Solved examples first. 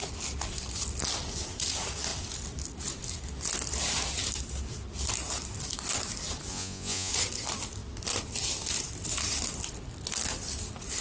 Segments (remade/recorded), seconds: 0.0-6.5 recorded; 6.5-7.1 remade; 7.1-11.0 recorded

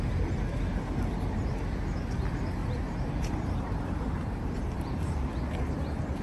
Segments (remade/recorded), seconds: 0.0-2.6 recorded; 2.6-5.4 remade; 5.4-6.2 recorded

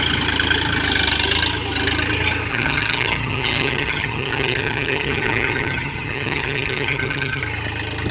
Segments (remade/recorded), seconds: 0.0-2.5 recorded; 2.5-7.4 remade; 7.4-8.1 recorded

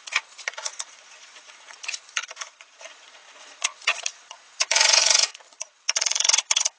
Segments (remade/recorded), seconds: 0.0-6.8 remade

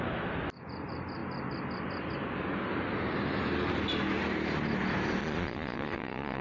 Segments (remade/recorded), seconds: 0.0-5.2 recorded; 5.2-6.4 remade